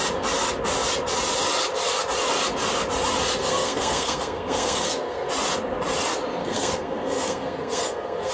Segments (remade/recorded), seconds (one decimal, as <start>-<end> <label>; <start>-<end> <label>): 0.0-3.4 recorded; 3.4-5.3 remade; 5.3-6.4 recorded; 6.4-8.3 remade